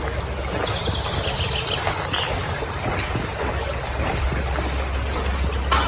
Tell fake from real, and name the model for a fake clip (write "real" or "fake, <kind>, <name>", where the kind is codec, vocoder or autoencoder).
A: real